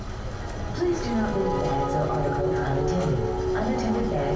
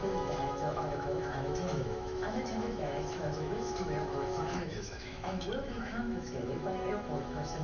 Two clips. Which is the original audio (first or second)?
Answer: first